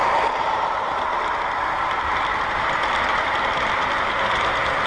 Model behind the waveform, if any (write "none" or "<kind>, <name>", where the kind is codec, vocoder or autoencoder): vocoder, BigVGAN v2